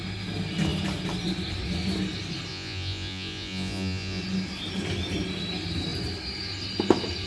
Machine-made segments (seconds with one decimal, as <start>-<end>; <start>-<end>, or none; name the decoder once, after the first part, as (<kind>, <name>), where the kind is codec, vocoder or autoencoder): 2.5-4.2 (vocoder, Vocos)